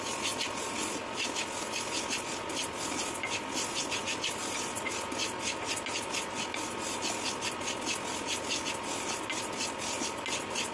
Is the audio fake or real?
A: real